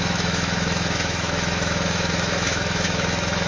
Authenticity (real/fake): fake